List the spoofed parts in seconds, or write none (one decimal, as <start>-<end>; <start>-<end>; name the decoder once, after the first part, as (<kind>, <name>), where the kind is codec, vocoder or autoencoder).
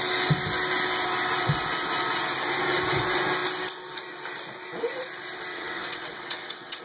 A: 5.5-6.8 (vocoder, WaveNeXt)